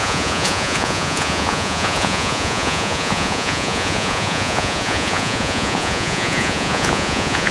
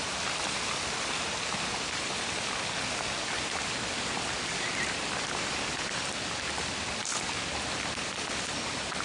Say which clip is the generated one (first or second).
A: first